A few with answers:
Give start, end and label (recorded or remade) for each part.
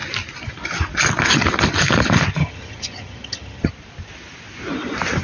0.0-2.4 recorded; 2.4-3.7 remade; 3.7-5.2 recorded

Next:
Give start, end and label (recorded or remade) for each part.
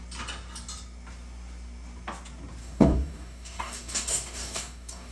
0.0-2.6 recorded; 2.6-5.1 remade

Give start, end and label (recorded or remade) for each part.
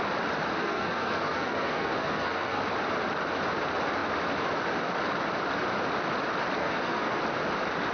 0.0-0.6 recorded; 0.6-2.6 remade; 2.6-6.6 recorded; 6.6-7.2 remade; 7.2-7.9 recorded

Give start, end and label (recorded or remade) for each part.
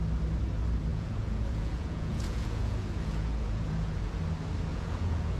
0.0-0.9 recorded; 0.9-4.1 remade; 4.1-4.7 recorded; 4.7-5.4 remade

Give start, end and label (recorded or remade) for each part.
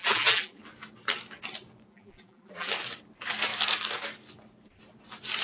0.0-0.6 remade; 0.6-1.9 recorded; 1.9-2.7 remade; 2.7-5.4 recorded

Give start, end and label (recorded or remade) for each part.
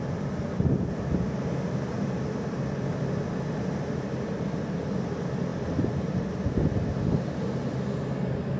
0.0-8.6 recorded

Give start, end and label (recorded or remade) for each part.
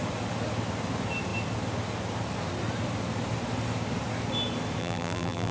0.0-4.8 recorded; 4.8-5.5 remade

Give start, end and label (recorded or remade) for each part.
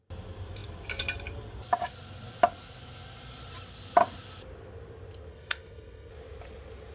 0.0-5.3 recorded; 5.3-6.1 remade; 6.1-6.9 recorded